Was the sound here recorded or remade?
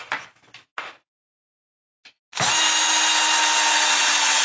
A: recorded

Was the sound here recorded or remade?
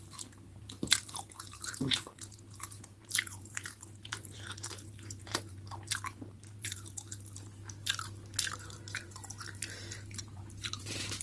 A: remade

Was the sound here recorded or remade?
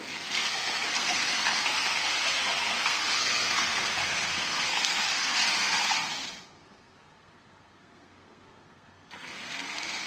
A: remade